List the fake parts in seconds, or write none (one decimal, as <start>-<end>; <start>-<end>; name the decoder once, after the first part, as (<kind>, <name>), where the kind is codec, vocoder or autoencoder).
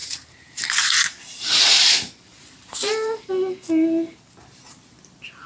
0.0-3.3 (vocoder, BigVGAN v2)